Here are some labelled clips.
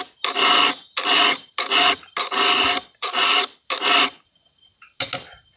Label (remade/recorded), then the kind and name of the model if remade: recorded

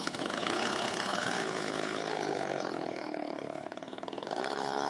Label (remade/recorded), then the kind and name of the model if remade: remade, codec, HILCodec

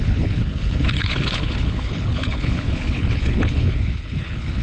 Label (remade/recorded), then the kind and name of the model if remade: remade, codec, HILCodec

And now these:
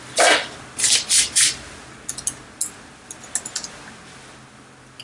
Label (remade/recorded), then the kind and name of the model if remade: recorded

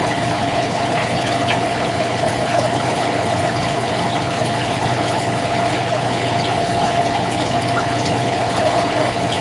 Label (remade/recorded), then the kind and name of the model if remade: remade, codec, HILCodec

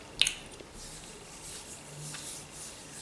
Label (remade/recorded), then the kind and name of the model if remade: recorded